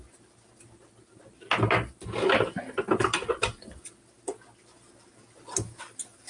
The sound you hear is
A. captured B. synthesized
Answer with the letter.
A